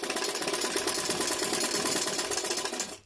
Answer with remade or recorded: recorded